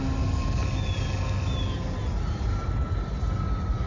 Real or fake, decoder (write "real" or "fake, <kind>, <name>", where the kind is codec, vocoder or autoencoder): real